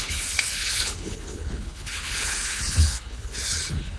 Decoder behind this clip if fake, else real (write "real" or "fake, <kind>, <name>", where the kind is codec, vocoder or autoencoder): fake, codec, HILCodec